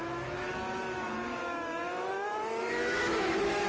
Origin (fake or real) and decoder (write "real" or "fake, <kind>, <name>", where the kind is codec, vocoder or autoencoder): fake, autoencoder, DAC-VAE